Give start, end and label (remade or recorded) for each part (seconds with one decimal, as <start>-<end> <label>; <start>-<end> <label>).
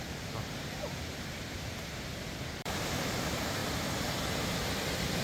0.0-3.6 remade; 3.6-4.3 recorded; 4.3-5.2 remade